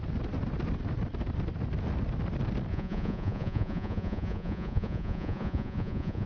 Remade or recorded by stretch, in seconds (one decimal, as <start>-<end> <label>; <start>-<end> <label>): 0.0-2.7 recorded; 2.7-6.3 remade

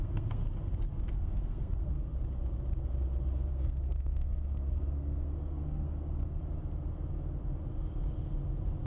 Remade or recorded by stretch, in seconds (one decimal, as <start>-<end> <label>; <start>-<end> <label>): 0.0-0.4 remade; 0.4-1.1 recorded; 1.1-2.1 remade; 2.1-3.5 recorded; 3.5-6.4 remade; 6.4-8.9 recorded

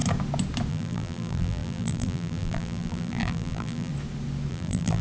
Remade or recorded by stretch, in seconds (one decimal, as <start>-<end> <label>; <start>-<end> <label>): 0.0-0.7 recorded; 0.7-3.9 remade; 3.9-4.5 recorded; 4.5-5.0 remade

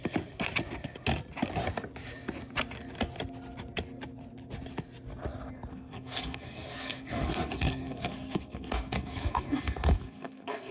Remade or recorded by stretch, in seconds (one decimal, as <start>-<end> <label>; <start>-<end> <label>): 0.0-5.7 recorded; 5.7-10.7 remade

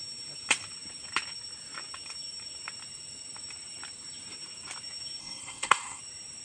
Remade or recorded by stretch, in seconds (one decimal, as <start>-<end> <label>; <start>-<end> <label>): 0.0-5.2 recorded; 5.2-6.0 remade; 6.0-6.4 recorded

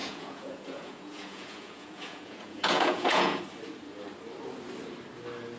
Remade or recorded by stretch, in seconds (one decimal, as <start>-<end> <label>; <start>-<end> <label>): 0.0-3.4 remade; 3.4-5.6 recorded

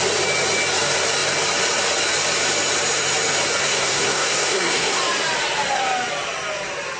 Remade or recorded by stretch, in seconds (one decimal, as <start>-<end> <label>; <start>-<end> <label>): 0.0-3.6 recorded; 3.6-5.0 remade; 5.0-7.0 recorded